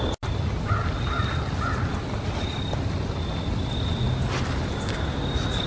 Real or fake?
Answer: real